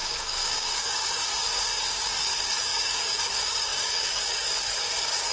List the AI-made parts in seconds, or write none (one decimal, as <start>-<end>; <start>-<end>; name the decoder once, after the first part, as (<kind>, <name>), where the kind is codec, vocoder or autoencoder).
0.0-5.3 (codec, DAC)

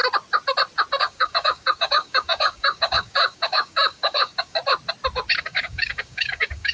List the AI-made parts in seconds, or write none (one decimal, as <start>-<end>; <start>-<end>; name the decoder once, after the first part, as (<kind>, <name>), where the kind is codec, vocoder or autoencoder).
1.0-4.6 (codec, DAC); 5.4-6.7

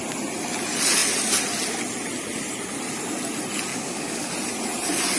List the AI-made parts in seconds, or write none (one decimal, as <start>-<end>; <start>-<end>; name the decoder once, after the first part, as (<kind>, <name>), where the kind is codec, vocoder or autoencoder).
3.7-4.3 (codec, DAC)

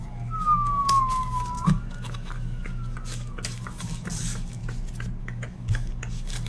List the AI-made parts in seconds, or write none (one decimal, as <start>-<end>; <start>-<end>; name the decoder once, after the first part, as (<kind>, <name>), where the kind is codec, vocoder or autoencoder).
0.0-4.6 (codec, DAC); 5.2-6.5